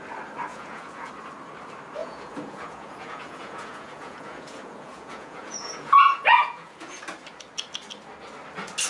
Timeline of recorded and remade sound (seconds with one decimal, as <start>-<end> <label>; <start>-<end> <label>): 0.0-0.5 recorded; 0.5-1.1 remade; 1.1-2.0 recorded; 2.0-7.0 remade; 7.0-8.9 recorded